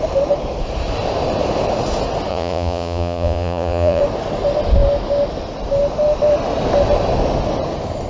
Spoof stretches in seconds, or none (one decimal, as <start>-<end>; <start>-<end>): 2.3-4.0